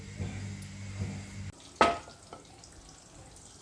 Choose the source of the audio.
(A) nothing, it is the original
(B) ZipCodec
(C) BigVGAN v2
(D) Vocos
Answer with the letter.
A